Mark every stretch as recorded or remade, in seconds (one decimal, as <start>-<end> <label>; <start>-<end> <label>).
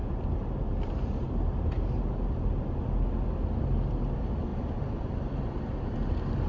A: 0.0-6.5 recorded